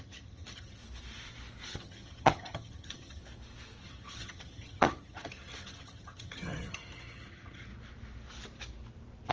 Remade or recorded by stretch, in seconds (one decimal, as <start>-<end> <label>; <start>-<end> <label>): 0.0-0.8 remade; 0.8-1.8 recorded; 1.8-3.2 remade; 3.2-3.8 recorded; 3.8-7.7 remade; 7.7-9.3 recorded